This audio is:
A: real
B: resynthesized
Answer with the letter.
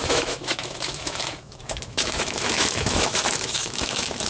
B